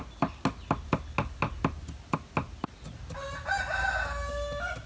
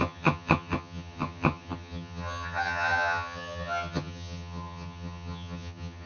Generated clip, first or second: second